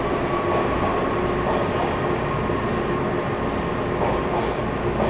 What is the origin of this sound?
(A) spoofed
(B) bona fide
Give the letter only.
B